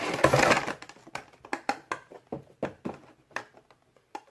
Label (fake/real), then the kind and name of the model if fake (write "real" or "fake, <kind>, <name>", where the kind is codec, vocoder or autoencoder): real